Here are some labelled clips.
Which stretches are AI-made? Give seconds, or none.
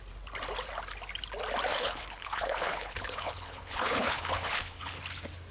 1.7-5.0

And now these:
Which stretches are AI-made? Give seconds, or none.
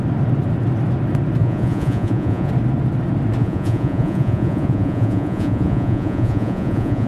1.4-2.5; 3.4-7.1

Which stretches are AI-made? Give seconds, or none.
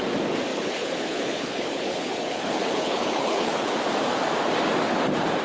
0.5-3.7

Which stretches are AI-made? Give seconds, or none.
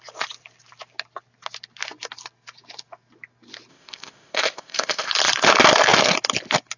3.7-5.1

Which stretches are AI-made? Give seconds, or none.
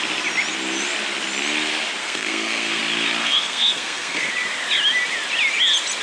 2.0-2.8; 3.2-4.3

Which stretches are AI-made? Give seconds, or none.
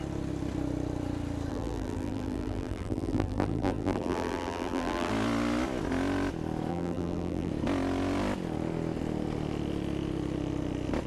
1.5-5.1; 6.7-7.5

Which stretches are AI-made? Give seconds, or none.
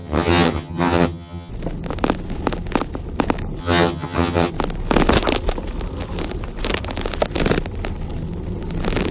0.0-1.5; 3.6-4.5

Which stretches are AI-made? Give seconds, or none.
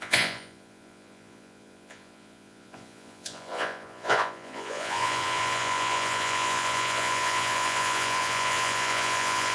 0.0-9.5